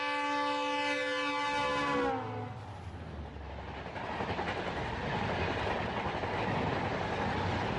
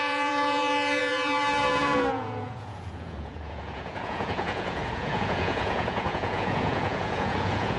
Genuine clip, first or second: first